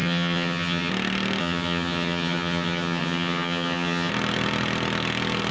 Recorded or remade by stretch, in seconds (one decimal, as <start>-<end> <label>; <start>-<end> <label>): 0.0-0.9 remade; 0.9-1.4 recorded; 1.4-4.1 remade; 4.1-5.5 recorded

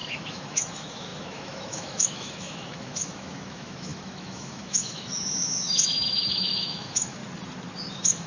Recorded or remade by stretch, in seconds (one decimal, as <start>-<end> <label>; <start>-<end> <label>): 0.0-7.2 remade; 7.2-7.9 recorded; 7.9-8.3 remade

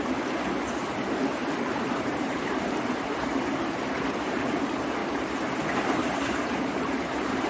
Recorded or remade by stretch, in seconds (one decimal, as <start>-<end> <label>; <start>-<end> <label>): 0.0-1.3 recorded; 1.3-3.4 remade; 3.4-5.0 recorded; 5.0-7.5 remade

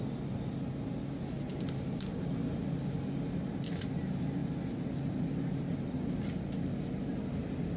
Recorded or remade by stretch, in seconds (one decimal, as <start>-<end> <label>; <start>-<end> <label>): 0.0-7.8 recorded

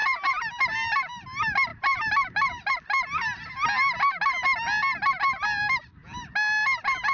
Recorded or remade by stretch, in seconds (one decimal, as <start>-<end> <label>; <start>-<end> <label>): 0.0-0.6 remade; 0.6-1.7 recorded; 1.7-2.7 remade; 2.7-7.1 recorded

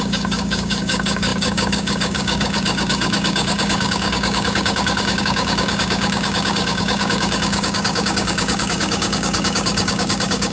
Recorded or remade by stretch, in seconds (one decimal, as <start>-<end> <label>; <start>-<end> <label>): 0.0-10.5 remade